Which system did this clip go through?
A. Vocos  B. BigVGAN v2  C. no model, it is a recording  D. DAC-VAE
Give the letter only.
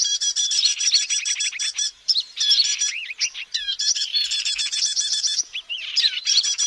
B